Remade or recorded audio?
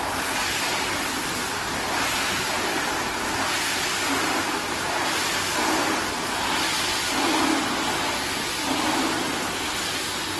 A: recorded